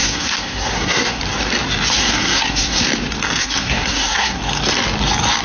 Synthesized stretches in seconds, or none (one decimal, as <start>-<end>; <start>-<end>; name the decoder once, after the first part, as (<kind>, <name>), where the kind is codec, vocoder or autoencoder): 0.0-1.2 (codec, SNAC); 2.0-2.8; 3.4-4.4